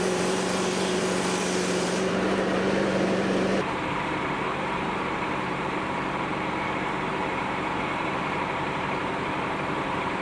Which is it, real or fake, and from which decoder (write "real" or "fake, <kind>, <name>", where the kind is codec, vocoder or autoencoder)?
fake, vocoder, BigVGAN v2